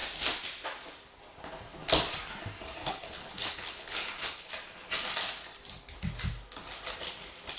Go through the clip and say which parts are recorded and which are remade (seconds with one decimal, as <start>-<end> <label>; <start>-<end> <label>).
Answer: 0.0-2.8 recorded; 2.8-4.5 remade; 4.5-7.6 recorded